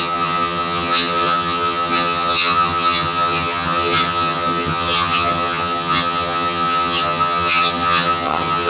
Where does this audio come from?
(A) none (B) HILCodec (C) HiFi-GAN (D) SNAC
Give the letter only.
C